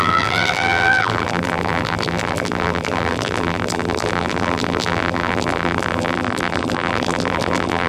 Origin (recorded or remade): remade